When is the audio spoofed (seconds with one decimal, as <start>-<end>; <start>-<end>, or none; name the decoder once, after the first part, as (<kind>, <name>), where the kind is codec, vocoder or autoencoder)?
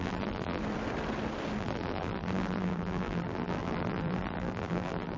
0.0-0.6 (vocoder, BigVGAN v2); 1.6-5.2